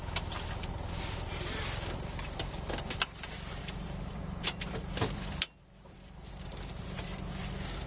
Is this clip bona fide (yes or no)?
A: no